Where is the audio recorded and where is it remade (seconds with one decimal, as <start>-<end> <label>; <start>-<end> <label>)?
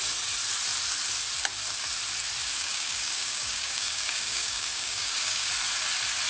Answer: 0.0-2.4 recorded; 2.4-5.5 remade; 5.5-6.3 recorded